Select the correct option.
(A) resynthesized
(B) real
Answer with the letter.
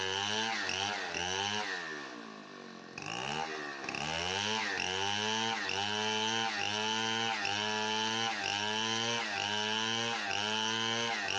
B